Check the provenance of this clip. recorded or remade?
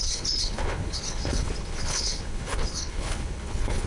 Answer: remade